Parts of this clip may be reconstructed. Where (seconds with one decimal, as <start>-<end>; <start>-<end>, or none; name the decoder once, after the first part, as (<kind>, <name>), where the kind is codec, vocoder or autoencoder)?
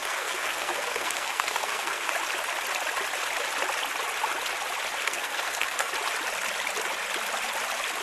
0.0-2.1 (codec, SNAC); 5.0-5.9